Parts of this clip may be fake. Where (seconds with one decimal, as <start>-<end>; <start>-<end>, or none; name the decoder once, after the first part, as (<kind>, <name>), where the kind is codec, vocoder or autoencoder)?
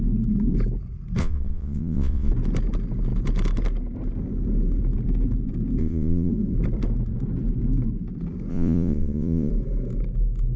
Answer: 1.2-2.3 (vocoder, Vocos); 5.8-6.3; 8.5-9.5